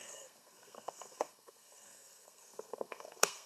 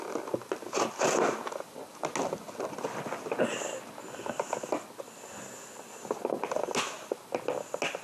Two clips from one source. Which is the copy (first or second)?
first